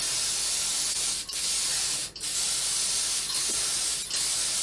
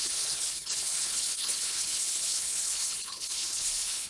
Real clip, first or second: first